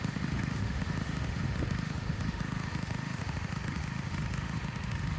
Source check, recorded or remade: remade